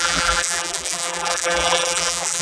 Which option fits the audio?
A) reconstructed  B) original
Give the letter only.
A